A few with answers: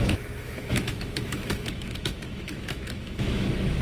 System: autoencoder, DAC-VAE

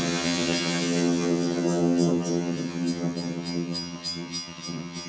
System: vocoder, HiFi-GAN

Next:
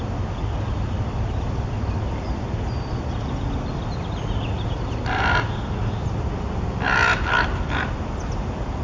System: none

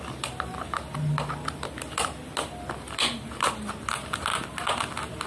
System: none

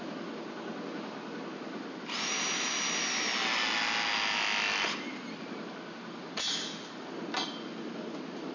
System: none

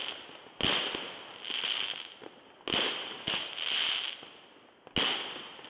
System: none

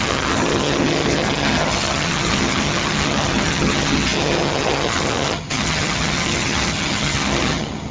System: vocoder, HiFi-GAN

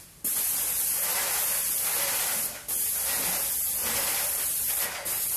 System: none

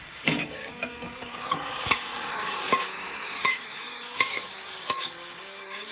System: codec, DAC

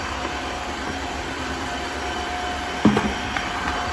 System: vocoder, BigVGAN v2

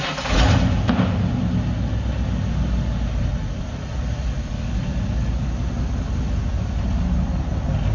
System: none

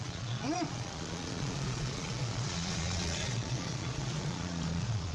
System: vocoder, Vocos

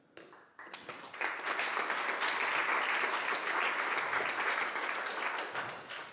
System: none